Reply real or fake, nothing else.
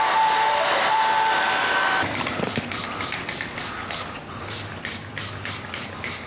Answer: fake